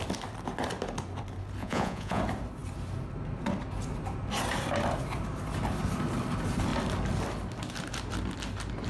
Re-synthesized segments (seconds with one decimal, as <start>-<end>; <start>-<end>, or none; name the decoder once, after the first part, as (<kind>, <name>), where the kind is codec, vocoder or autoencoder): 1.6-2.2 (vocoder, Vocos)